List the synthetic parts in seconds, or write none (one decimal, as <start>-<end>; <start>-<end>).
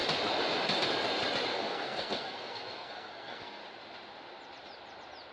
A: 1.5-3.6